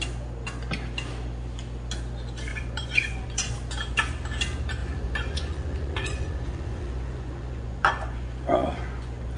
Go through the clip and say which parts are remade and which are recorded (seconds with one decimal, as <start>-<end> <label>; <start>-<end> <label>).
0.0-2.5 recorded; 2.5-3.5 remade; 3.5-4.8 recorded; 4.8-9.4 remade